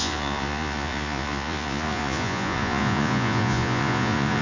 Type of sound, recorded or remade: remade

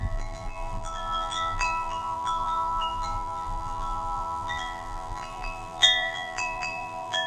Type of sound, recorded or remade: remade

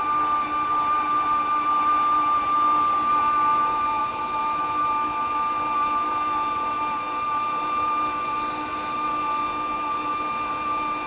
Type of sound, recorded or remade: recorded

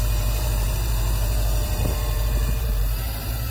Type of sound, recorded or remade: remade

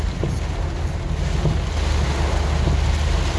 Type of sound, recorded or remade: recorded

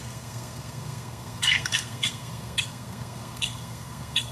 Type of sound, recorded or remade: remade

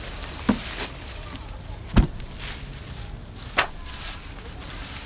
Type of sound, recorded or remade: recorded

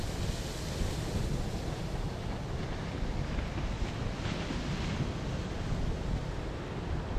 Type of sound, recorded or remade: recorded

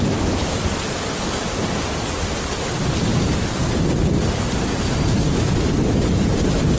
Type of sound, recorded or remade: recorded